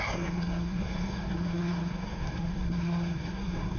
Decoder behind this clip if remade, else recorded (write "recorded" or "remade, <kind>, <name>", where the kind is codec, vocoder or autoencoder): remade, codec, SNAC